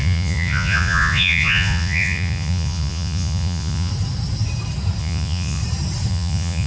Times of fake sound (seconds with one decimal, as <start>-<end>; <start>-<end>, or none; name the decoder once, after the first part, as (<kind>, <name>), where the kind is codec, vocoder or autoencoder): 0.0-3.9 (vocoder, Vocos); 5.0-5.6; 6.1-6.7